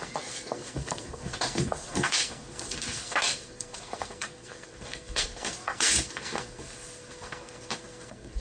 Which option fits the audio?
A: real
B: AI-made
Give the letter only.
B